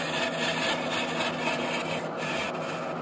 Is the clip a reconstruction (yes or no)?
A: no